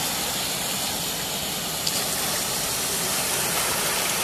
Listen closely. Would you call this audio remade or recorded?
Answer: recorded